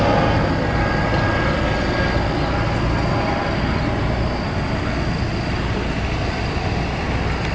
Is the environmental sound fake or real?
real